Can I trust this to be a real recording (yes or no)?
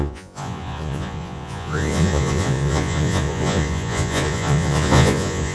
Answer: no